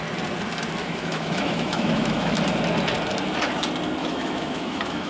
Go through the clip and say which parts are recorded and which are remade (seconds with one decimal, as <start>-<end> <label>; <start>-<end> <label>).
0.0-0.8 recorded; 0.8-2.4 remade; 2.4-4.0 recorded; 4.0-5.1 remade